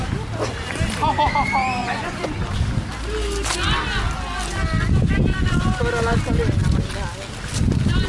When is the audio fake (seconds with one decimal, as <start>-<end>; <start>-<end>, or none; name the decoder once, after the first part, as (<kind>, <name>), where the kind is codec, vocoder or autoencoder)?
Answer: 1.8-2.4 (vocoder, Vocos)